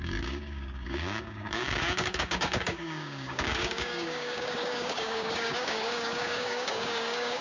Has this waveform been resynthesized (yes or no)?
yes